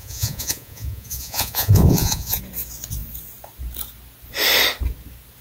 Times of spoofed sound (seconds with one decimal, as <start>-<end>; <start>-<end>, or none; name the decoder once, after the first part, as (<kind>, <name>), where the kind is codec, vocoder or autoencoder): 0.0-2.4 (vocoder, Vocos)